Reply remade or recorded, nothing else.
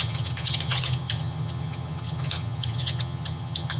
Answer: remade